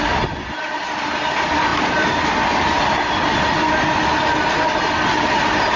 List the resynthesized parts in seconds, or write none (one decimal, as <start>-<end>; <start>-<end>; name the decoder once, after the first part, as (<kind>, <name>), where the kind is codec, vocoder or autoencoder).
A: none